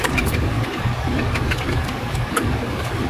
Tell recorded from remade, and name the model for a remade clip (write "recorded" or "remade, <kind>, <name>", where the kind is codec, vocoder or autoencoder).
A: remade, codec, DAC